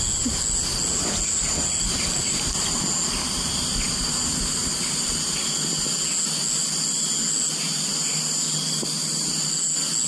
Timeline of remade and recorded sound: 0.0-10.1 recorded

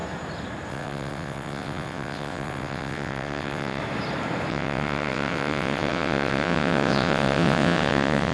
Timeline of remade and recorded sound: 0.0-0.7 recorded; 0.7-3.8 remade; 3.8-4.5 recorded; 4.5-8.3 remade